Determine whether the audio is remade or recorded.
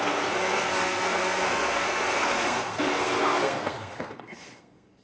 remade